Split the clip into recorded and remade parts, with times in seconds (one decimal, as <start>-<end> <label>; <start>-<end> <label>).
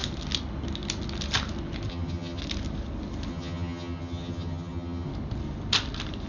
0.0-1.9 recorded; 1.9-2.4 remade; 2.4-3.3 recorded; 3.3-5.1 remade; 5.1-6.3 recorded